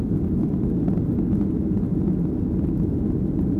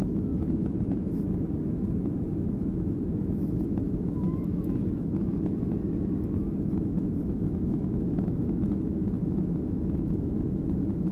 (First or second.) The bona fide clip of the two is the first